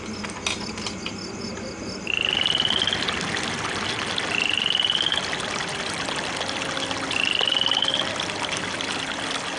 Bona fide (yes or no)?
yes